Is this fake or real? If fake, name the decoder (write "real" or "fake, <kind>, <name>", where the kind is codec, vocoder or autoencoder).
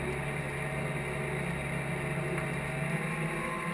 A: real